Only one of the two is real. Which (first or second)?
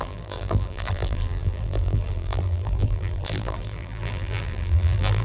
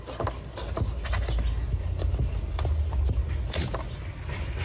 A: second